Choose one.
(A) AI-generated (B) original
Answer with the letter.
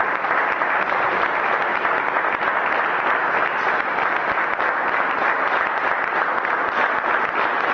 B